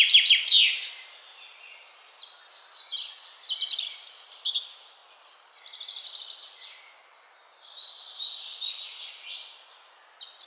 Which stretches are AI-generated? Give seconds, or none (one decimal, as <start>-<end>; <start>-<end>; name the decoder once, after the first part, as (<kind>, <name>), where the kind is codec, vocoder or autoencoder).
none